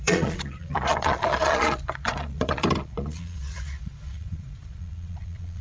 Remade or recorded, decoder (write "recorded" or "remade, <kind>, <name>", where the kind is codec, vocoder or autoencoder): remade, vocoder, Vocos